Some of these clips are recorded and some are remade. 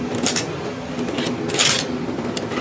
recorded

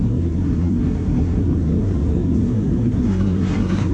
remade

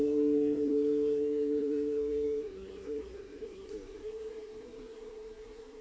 remade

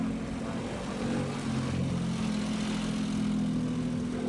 recorded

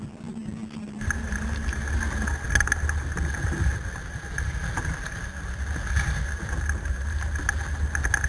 recorded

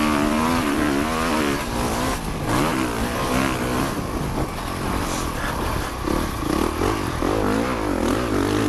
recorded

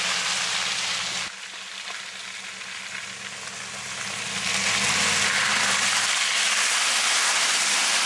recorded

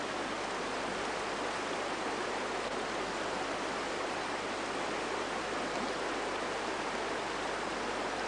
recorded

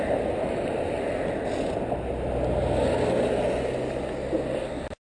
recorded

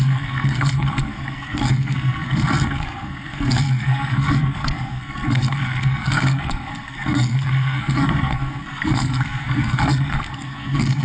remade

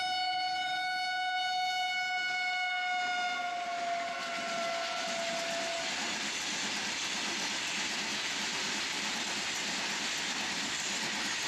recorded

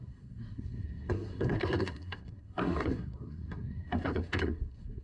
remade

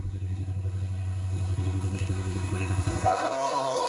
remade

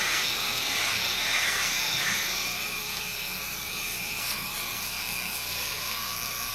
remade